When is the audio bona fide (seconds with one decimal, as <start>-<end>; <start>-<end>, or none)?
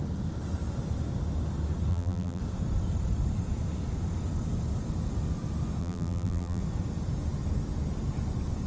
0.0-1.9; 2.4-5.8; 6.6-8.7